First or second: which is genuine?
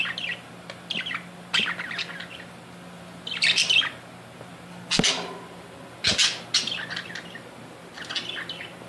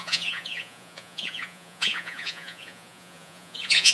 first